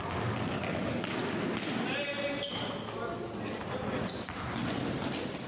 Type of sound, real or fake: real